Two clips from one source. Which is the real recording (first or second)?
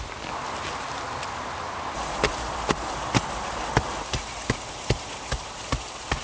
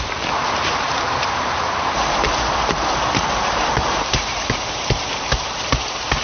first